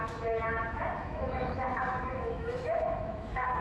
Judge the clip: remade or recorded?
remade